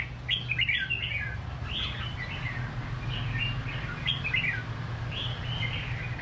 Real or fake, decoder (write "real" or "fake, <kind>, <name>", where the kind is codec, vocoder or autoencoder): real